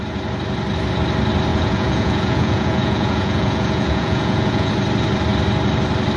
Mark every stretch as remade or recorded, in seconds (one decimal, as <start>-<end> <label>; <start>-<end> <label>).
0.0-1.5 recorded; 1.5-4.7 remade; 4.7-6.2 recorded